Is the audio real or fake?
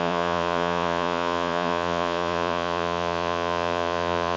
fake